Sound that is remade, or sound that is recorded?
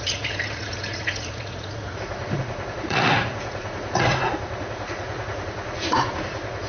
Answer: remade